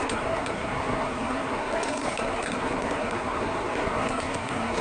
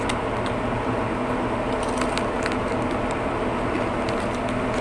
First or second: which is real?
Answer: second